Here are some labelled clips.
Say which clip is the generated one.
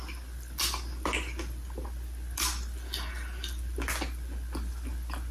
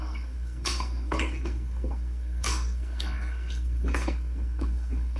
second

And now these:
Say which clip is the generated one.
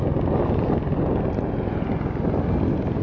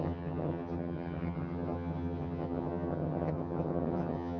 second